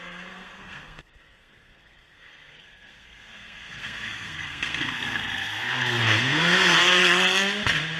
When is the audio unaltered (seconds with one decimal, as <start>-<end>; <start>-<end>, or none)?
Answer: 7.0-8.0